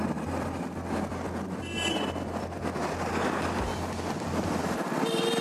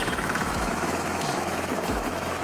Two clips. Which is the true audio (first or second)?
first